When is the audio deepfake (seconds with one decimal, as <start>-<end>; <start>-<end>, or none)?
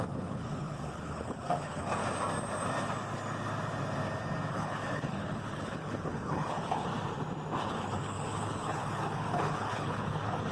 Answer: 0.0-2.0; 4.5-6.9; 7.6-10.5